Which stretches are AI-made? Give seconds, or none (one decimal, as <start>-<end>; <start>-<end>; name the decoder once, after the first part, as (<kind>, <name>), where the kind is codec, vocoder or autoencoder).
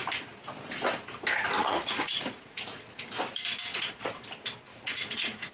1.6-3.0 (vocoder, Vocos); 3.7-4.2; 4.7-5.5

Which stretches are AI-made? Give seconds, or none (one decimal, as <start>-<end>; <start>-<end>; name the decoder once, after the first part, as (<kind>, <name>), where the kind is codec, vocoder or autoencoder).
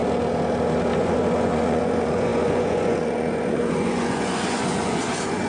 1.0-5.5 (vocoder, Vocos)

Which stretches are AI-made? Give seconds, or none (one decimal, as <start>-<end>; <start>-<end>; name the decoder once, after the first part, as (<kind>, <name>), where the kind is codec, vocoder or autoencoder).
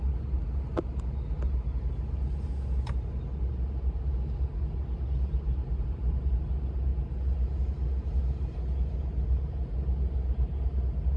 none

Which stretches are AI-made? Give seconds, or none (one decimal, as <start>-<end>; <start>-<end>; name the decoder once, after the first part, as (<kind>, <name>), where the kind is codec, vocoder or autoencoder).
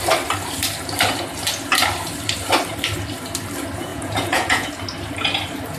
3.9-4.7 (vocoder, Vocos)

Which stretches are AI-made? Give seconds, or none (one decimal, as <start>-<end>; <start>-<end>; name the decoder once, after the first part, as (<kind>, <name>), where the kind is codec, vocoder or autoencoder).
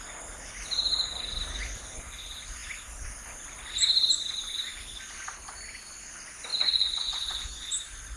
6.5-7.7 (vocoder, Vocos)